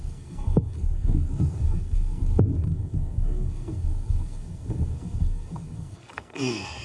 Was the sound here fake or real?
fake